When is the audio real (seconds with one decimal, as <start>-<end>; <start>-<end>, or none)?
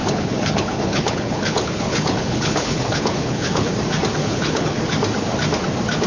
3.7-4.2; 4.8-6.1